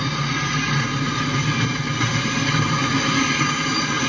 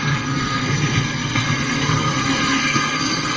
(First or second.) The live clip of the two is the first